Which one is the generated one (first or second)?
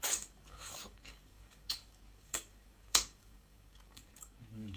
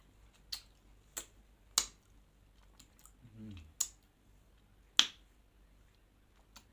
first